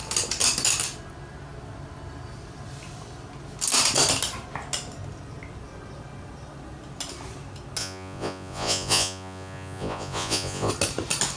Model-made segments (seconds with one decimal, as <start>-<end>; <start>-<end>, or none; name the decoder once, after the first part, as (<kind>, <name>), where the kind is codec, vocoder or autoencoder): 7.8-10.7 (vocoder, Vocos)